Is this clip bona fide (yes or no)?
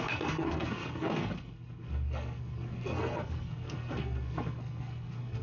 no